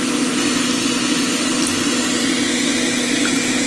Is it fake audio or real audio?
real